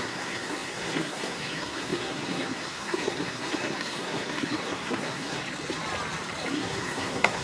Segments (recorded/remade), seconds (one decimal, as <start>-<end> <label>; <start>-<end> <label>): 0.0-5.4 remade; 5.4-6.5 recorded; 6.5-7.4 remade